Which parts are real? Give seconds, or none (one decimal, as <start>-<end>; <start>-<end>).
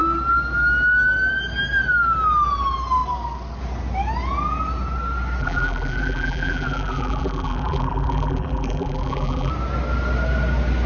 0.0-5.4; 9.5-10.9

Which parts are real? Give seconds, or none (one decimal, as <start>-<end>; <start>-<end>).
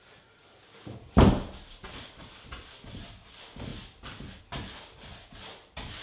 0.0-6.0